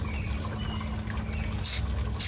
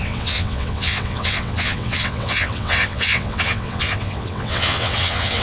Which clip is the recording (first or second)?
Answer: first